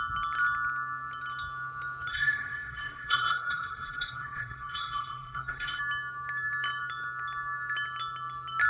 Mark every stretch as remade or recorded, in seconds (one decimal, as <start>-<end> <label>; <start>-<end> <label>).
0.0-2.1 recorded; 2.1-5.8 remade; 5.8-8.7 recorded